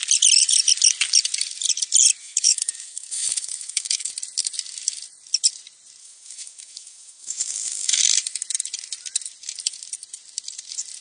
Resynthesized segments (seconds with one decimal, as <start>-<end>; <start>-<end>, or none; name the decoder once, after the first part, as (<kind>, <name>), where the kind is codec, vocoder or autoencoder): 2.2-4.1 (autoencoder, DAC-VAE); 6.0-8.0